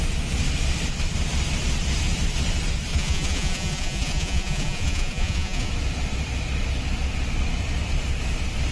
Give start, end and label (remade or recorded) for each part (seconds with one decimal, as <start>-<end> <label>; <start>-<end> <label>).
0.0-2.9 recorded; 2.9-5.7 remade; 5.7-8.7 recorded